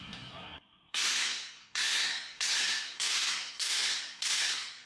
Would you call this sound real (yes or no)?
no